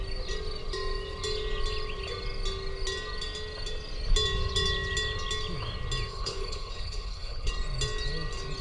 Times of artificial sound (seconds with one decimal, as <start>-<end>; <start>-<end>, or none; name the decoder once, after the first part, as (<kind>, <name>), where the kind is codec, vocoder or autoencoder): 6.1-7.5 (codec, HILCodec)